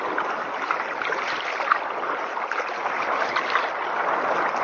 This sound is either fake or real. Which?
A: real